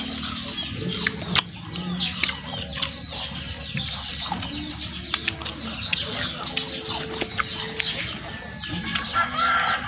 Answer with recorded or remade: recorded